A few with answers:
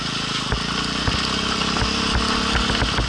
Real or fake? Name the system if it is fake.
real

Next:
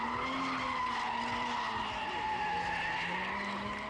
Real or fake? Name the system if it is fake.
real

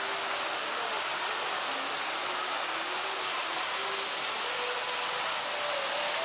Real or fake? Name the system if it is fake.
real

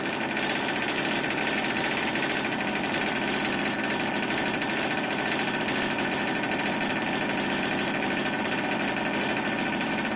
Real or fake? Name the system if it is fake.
real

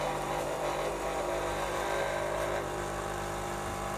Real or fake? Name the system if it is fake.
fake, vocoder, BigVGAN v2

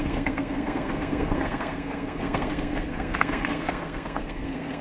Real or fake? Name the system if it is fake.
fake, codec, SNAC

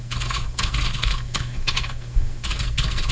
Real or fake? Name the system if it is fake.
fake, codec, SNAC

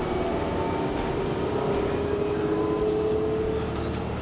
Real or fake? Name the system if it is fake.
real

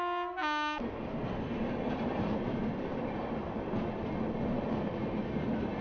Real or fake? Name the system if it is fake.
real